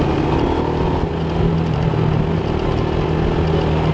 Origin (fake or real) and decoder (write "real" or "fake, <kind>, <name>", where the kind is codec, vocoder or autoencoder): real